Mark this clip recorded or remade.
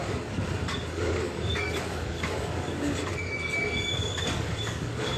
remade